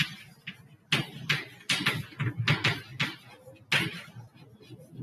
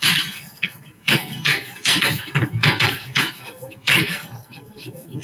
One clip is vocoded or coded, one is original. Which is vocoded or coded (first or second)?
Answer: second